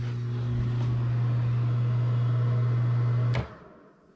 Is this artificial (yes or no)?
no